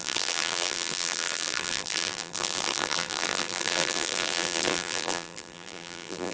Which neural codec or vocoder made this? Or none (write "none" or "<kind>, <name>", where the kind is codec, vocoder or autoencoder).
vocoder, BigVGAN v2